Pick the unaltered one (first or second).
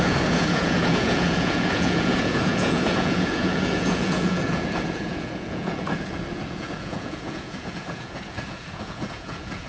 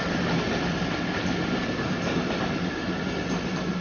second